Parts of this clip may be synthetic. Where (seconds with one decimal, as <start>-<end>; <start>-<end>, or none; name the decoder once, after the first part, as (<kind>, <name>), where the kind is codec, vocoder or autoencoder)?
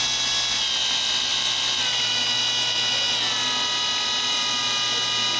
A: 1.3-2.2 (vocoder, BigVGAN v2)